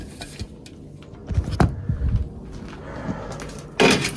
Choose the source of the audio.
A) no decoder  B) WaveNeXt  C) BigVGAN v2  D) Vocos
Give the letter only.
A